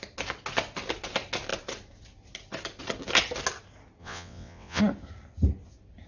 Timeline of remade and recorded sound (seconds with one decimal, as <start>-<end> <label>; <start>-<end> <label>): 0.0-4.0 recorded; 4.0-4.8 remade; 4.8-6.1 recorded